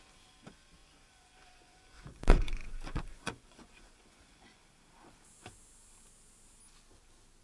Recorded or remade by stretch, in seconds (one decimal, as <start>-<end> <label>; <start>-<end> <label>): 0.0-0.8 recorded; 0.8-4.6 remade; 4.6-7.4 recorded